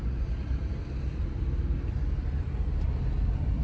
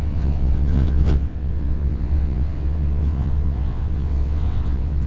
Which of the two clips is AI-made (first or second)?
second